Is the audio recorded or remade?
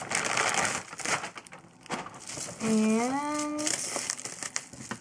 recorded